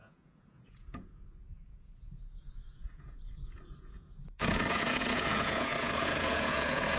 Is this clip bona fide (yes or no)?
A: no